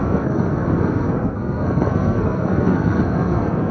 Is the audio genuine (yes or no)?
no